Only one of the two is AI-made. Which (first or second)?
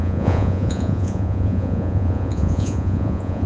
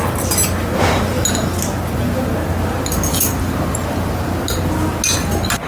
first